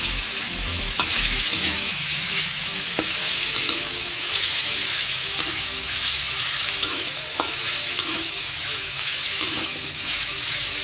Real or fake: fake